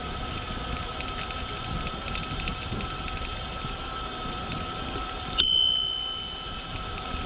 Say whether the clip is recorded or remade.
recorded